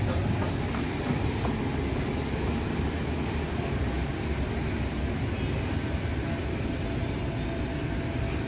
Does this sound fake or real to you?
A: real